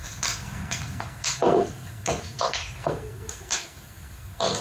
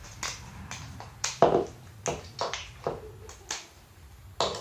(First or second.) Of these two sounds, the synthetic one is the first